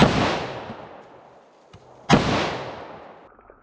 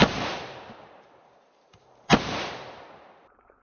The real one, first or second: first